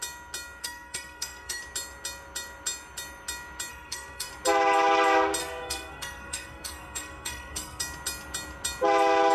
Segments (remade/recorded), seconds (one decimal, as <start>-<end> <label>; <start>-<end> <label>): 0.0-0.6 recorded; 0.6-1.6 remade; 1.6-3.7 recorded; 3.7-4.3 remade; 4.3-5.4 recorded; 5.4-7.8 remade; 7.8-9.3 recorded